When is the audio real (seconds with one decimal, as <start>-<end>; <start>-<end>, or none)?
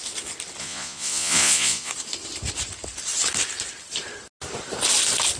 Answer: 0.0-0.6; 1.9-5.4